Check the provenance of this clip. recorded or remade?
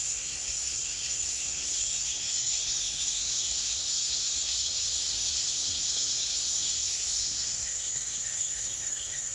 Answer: remade